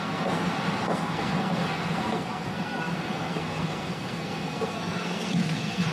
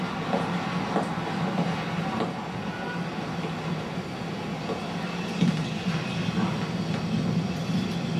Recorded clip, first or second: second